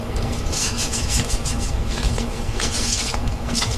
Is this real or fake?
fake